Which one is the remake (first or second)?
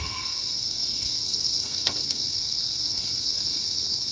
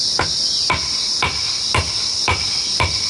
first